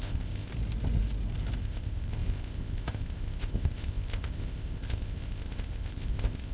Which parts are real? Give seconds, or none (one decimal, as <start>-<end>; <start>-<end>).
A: 0.5-1.6